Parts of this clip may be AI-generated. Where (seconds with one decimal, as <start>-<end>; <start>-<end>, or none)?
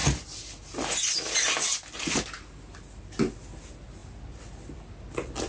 none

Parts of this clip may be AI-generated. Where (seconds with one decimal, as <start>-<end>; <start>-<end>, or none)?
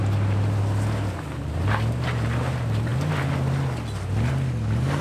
none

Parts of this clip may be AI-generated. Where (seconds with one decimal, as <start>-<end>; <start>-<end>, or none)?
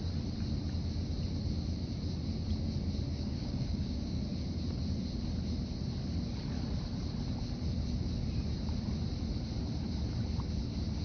3.1-4.2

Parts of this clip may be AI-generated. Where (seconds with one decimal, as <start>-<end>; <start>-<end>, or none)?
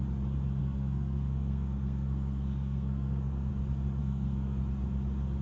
0.6-3.5; 4.0-4.6